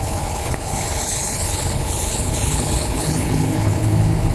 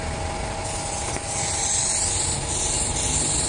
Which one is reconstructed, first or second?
first